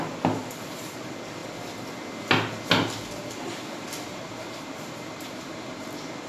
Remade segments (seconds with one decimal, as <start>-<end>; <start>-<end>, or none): 0.4-0.9; 3.2-5.8